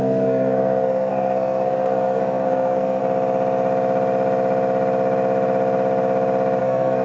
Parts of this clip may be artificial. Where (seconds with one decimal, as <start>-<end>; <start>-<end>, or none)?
0.0-3.0; 6.6-7.0